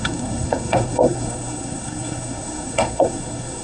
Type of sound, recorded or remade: remade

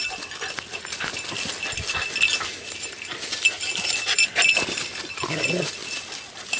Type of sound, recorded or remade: recorded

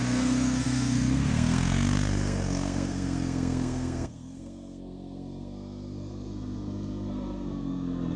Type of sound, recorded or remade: remade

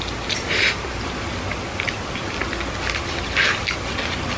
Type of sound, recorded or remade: recorded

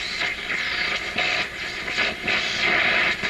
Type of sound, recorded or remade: recorded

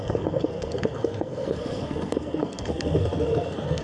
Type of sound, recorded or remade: remade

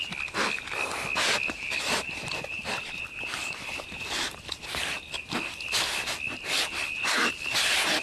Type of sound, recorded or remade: recorded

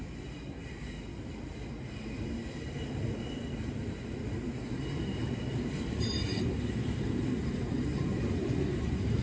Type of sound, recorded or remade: recorded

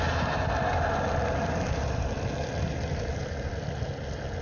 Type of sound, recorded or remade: recorded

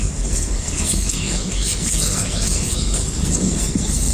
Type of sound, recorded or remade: remade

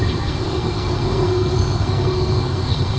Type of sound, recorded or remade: remade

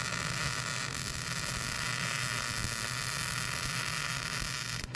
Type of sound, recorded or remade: recorded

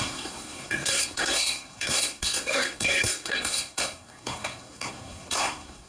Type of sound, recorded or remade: remade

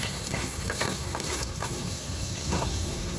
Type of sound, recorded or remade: remade